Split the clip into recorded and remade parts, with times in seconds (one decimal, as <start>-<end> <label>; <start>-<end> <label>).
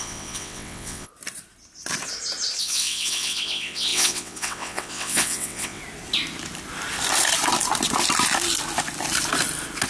0.0-1.1 remade; 1.1-2.6 recorded; 2.6-5.8 remade; 5.8-9.9 recorded